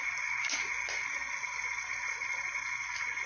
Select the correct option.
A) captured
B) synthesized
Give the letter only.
A